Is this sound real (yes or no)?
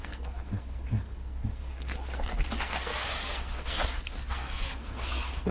no